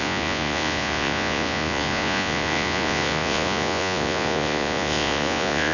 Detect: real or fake fake